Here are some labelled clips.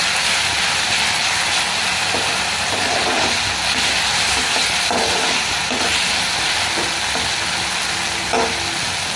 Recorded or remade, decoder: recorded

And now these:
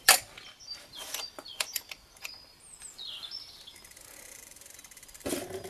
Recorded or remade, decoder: remade, vocoder, BigVGAN v2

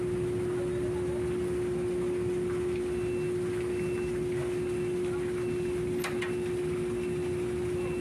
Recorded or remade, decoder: recorded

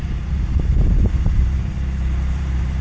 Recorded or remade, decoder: remade, vocoder, BigVGAN v2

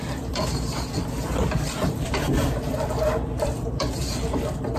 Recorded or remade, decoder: remade, vocoder, BigVGAN v2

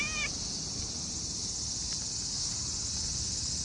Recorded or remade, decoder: recorded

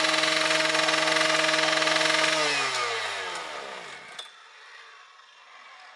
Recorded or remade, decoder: recorded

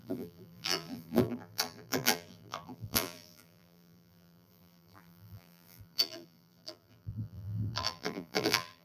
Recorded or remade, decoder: remade, vocoder, BigVGAN v2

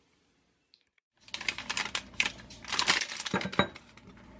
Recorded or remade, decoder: recorded